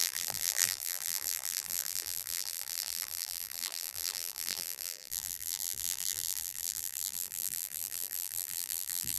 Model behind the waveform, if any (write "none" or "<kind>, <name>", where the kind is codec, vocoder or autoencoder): vocoder, BigVGAN v2